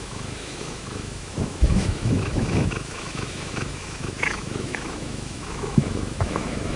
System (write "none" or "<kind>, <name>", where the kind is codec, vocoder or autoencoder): autoencoder, DAC-VAE